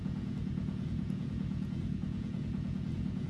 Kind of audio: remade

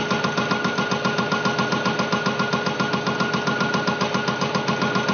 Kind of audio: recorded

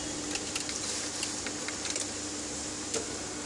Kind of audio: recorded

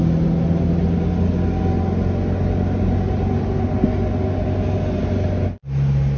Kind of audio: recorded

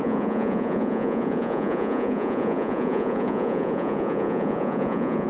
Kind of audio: remade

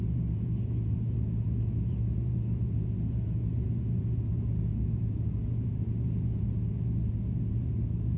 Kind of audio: remade